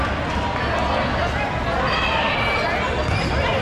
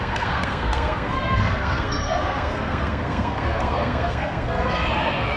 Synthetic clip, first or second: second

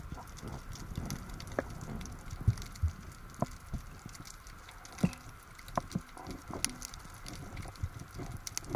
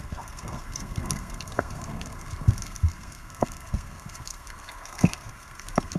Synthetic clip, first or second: second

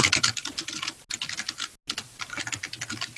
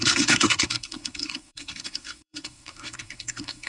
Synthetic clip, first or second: second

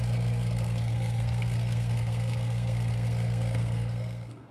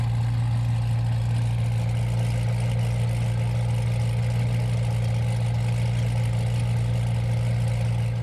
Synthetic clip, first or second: first